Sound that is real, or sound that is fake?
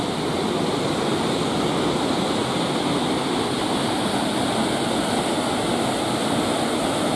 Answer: real